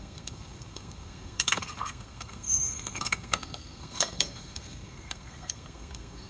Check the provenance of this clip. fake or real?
fake